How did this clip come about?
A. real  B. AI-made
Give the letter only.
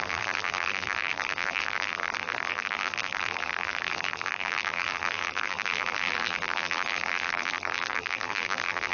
B